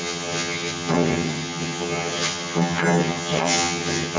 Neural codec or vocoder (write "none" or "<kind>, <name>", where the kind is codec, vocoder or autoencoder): vocoder, HiFi-GAN